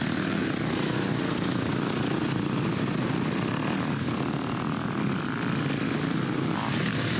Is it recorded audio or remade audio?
recorded